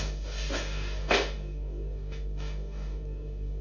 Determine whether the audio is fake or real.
fake